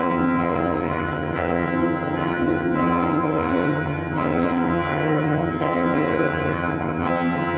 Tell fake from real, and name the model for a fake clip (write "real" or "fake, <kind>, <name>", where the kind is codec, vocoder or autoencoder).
fake, vocoder, HiFi-GAN